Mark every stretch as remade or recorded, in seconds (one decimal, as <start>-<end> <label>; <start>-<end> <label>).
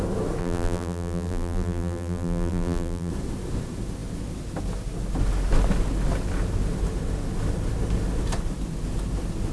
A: 0.0-0.4 recorded; 0.4-3.1 remade; 3.1-9.5 recorded